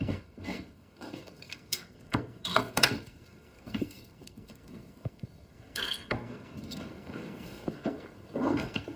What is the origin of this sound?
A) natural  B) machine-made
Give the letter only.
B